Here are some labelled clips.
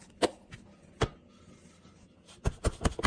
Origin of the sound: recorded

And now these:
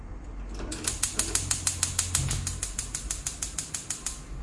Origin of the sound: recorded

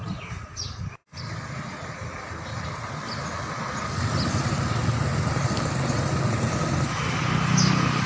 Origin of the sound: recorded